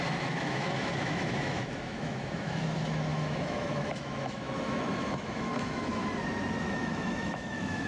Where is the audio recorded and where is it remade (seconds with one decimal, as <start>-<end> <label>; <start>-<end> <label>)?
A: 0.0-6.0 remade; 6.0-6.6 recorded; 6.6-7.9 remade